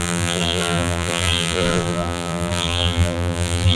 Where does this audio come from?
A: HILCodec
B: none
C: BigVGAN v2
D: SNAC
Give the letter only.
C